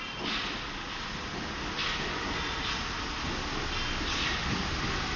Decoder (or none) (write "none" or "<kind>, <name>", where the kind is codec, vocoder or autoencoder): none